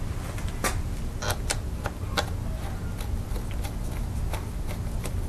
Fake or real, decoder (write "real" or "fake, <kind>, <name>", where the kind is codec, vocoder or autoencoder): real